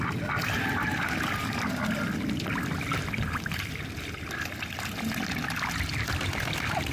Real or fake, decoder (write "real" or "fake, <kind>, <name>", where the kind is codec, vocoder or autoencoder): real